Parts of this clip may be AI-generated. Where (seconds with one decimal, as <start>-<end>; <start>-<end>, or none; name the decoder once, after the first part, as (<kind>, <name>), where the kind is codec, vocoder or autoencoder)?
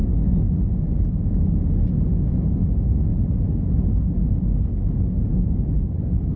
none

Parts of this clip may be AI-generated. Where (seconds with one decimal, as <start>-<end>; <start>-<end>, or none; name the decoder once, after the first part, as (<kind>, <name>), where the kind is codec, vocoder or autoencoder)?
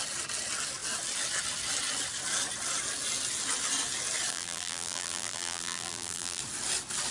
4.3-6.4 (vocoder, BigVGAN v2)